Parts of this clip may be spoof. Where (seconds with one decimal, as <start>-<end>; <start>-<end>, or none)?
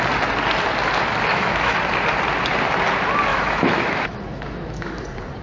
1.3-1.8; 3.3-5.0